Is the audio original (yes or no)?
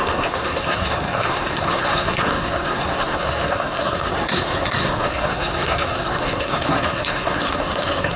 no